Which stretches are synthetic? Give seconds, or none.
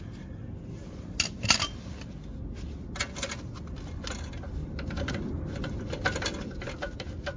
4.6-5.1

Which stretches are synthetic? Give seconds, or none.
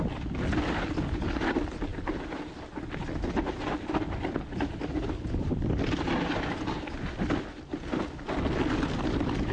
1.9-3.1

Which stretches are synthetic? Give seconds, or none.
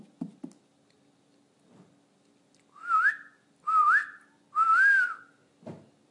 none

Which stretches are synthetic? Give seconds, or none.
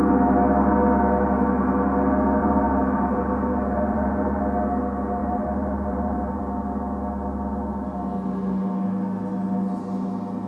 2.4-4.4; 5.2-6.4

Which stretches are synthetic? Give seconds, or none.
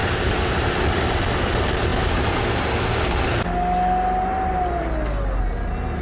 0.0-0.7